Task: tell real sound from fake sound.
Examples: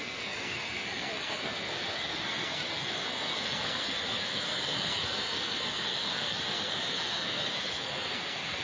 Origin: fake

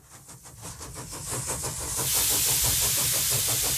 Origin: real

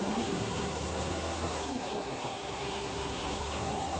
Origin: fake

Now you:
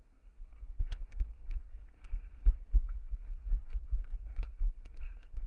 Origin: fake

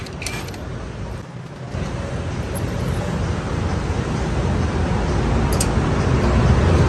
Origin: real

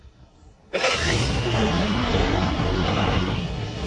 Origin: fake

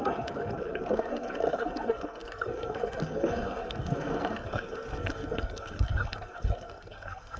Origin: fake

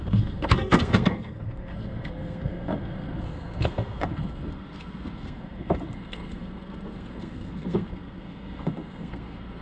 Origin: fake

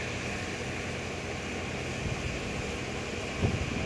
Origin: real